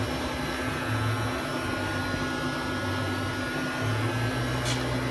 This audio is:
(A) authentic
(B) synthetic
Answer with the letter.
A